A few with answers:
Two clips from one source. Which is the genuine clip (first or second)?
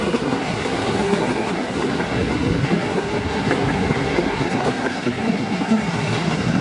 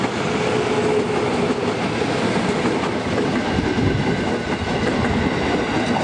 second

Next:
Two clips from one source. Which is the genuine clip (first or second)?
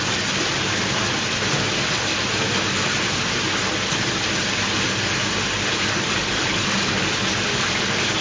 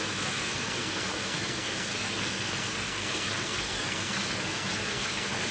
first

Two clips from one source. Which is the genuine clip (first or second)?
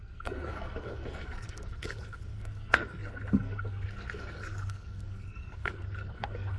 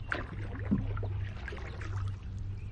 second